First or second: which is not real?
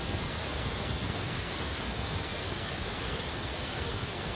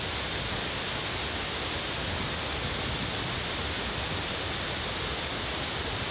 first